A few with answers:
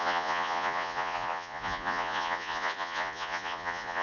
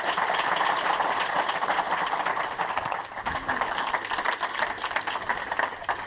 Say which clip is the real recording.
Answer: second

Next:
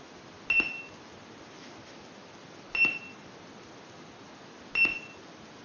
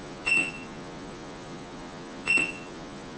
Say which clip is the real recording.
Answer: first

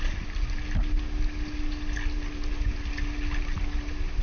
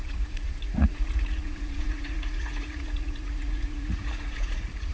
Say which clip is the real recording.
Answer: first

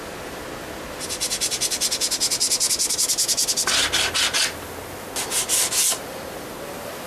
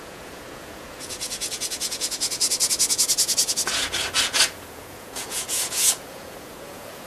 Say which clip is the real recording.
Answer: first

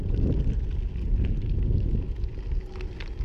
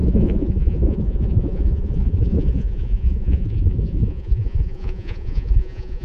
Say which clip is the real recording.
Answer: first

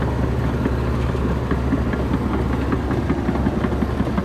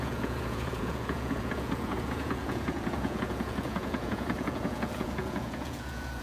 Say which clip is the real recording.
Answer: first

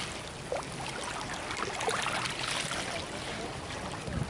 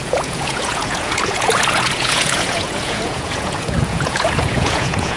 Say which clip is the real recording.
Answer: first